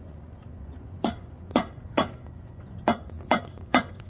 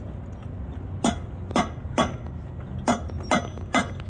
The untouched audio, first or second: second